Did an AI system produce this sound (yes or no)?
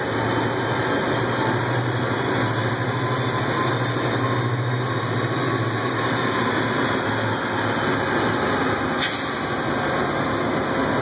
no